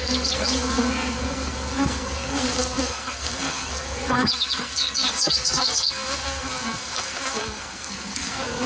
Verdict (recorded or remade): remade